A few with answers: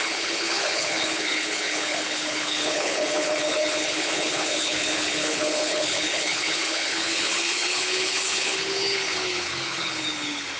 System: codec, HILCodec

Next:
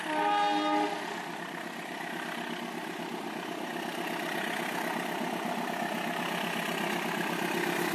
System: none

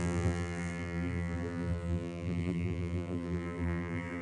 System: vocoder, BigVGAN v2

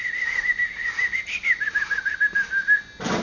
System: none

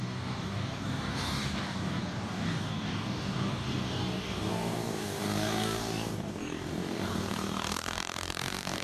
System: codec, DAC